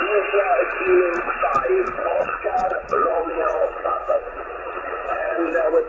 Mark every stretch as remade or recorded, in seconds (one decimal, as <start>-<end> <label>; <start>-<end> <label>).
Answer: 0.0-2.0 recorded; 2.0-5.5 remade; 5.5-5.9 recorded